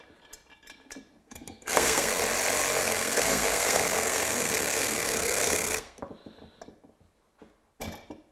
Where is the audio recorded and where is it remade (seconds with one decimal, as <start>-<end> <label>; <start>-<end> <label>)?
0.0-1.2 recorded; 1.2-2.2 remade; 2.2-2.8 recorded; 2.8-6.0 remade; 6.0-8.3 recorded